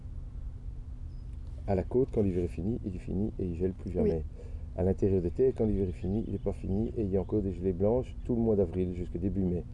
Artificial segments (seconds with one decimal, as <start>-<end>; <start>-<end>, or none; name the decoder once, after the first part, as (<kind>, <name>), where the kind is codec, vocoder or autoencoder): none